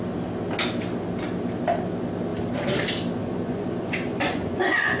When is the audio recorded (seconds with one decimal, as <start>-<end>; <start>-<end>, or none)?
0.0-3.2